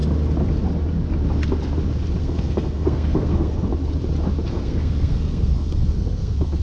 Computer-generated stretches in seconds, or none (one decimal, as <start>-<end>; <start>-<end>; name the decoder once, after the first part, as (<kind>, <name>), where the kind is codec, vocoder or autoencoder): 2.2-3.7 (codec, SNAC); 4.5-6.6